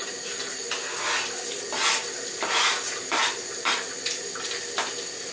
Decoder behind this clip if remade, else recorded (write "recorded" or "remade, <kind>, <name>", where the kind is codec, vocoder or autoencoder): recorded